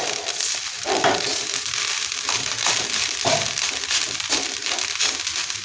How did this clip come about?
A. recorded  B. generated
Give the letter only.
B